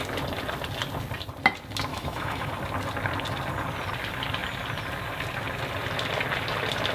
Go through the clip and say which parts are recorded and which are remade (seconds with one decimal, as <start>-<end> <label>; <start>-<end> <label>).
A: 0.0-1.9 recorded; 1.9-2.5 remade; 2.5-6.9 recorded